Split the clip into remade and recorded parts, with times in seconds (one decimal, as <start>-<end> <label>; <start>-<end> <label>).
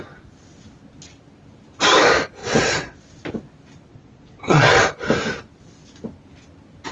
0.0-2.4 recorded; 2.4-3.0 remade; 3.0-3.9 recorded; 3.9-4.8 remade; 4.8-6.9 recorded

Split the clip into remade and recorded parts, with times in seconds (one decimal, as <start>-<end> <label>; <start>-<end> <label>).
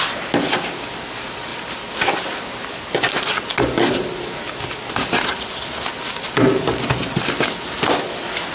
0.0-8.5 recorded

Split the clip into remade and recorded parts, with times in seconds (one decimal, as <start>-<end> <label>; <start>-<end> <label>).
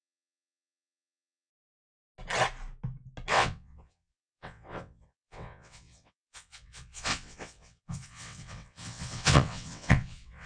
0.0-1.5 remade; 1.5-3.3 recorded; 3.3-10.5 remade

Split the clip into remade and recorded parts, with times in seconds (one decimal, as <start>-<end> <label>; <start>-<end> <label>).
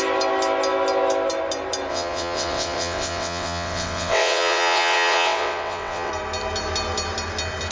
0.0-1.9 recorded; 1.9-6.1 remade; 6.1-7.7 recorded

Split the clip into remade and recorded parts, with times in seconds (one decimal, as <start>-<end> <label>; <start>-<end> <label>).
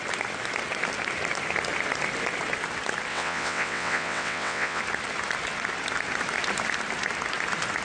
0.0-3.1 recorded; 3.1-4.8 remade; 4.8-7.8 recorded